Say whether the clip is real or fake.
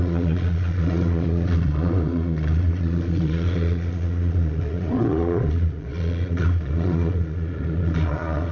fake